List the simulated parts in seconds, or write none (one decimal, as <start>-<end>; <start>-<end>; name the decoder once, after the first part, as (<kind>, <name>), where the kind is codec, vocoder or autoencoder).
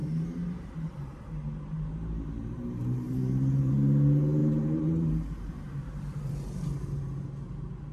0.0-3.7 (vocoder, BigVGAN v2); 4.4-7.0